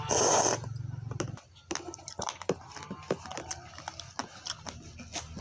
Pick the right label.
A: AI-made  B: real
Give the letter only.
B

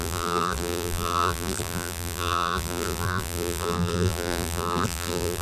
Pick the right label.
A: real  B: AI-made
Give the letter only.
B